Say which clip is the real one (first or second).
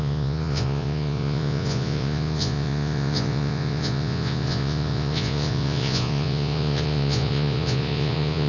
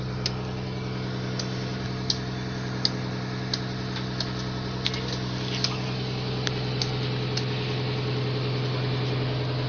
second